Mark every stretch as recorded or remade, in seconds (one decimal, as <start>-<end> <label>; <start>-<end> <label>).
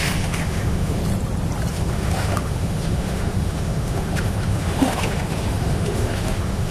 0.0-1.0 remade; 1.0-1.7 recorded; 1.7-6.7 remade